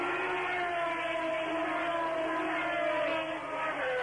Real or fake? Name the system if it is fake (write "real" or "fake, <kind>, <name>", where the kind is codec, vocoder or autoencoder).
real